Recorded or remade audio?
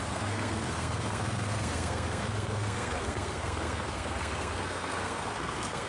remade